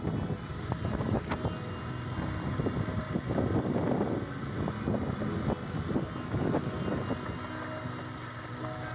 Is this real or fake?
real